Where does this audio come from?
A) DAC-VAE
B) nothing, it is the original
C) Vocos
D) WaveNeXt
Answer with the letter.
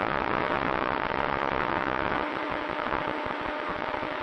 D